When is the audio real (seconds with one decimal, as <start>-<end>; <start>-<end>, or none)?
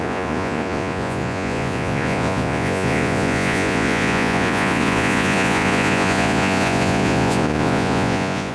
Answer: none